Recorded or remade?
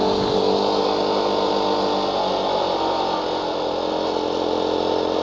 recorded